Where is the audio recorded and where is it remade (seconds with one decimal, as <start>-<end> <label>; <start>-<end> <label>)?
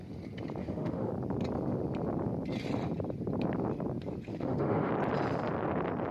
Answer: 0.0-0.6 recorded; 0.6-1.1 remade; 1.1-4.3 recorded; 4.3-4.9 remade; 4.9-6.1 recorded